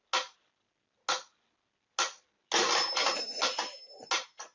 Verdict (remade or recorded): recorded